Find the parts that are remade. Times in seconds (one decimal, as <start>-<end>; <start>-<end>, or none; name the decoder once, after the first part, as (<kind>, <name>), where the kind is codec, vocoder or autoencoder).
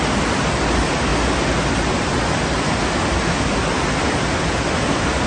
none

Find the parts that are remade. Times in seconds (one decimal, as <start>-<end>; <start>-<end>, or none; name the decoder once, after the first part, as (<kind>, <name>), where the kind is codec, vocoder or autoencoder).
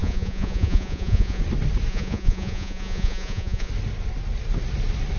0.0-1.4 (vocoder, Vocos); 1.9-3.7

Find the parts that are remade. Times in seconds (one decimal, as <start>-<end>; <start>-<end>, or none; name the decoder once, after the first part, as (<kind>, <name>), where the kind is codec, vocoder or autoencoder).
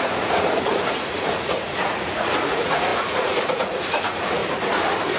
0.0-4.4 (vocoder, Vocos)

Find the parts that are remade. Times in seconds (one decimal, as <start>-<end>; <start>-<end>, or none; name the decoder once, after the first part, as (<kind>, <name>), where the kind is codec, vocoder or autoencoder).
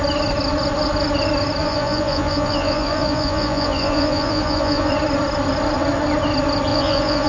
1.6-4.9 (vocoder, Vocos); 6.7-7.3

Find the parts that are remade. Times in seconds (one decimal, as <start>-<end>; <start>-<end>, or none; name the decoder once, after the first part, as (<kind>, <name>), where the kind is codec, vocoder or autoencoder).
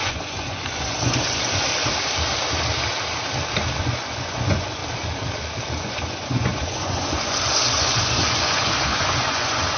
0.0-1.7 (vocoder, Vocos); 3.8-4.8; 5.7-9.8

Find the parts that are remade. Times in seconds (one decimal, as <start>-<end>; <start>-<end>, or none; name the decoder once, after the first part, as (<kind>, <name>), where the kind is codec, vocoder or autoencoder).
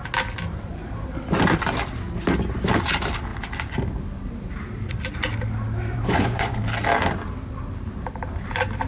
5.9-6.6 (vocoder, Vocos)